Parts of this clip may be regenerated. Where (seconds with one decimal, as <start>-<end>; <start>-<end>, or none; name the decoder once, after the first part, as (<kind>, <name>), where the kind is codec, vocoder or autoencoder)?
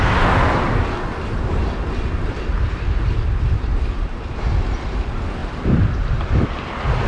1.1-4.2 (vocoder, BigVGAN v2); 5.4-6.4